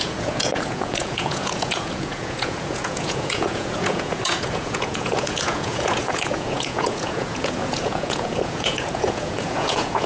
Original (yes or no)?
no